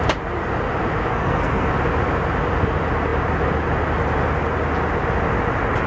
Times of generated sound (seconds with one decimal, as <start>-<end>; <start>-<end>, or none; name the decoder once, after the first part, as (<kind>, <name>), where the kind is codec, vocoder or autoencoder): 1.1-1.7 (codec, SNAC)